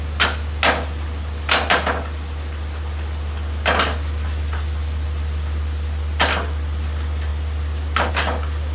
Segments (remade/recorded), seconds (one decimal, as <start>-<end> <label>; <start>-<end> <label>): 0.0-8.7 recorded